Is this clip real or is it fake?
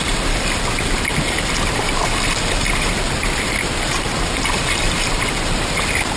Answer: real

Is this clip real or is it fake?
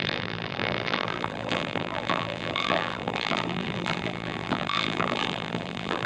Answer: fake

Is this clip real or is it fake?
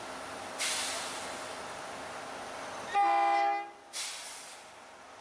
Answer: real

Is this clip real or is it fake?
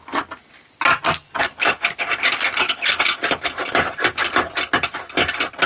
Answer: real